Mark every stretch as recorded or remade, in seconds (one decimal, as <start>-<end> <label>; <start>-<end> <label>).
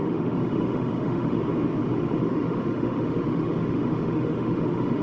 0.0-1.4 remade; 1.4-1.8 recorded; 1.8-5.0 remade